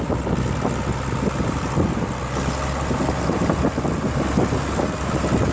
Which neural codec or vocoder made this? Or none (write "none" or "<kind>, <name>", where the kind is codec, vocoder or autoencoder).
none